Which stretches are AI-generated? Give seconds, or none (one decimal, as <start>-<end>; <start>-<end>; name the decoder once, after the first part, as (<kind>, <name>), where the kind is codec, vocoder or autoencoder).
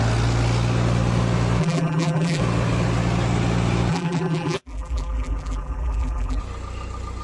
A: 1.6-2.4 (vocoder, BigVGAN v2); 3.9-6.4